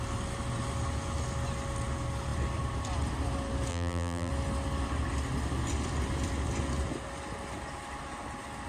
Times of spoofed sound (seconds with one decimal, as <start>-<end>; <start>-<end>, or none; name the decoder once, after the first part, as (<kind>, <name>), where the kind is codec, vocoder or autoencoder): 3.7-4.3 (vocoder, BigVGAN v2)